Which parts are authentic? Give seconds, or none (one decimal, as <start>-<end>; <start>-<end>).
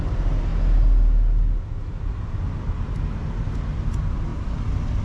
0.5-3.5